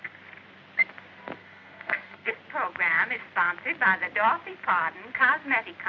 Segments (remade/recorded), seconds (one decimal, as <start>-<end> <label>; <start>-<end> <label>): 0.0-1.4 recorded; 1.4-2.3 remade; 2.3-5.9 recorded